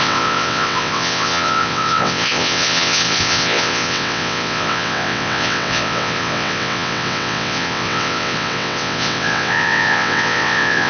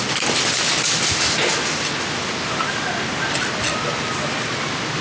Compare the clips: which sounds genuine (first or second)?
second